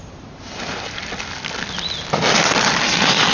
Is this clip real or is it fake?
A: real